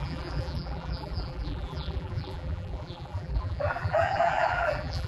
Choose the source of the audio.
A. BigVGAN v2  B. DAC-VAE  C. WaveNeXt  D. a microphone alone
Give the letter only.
A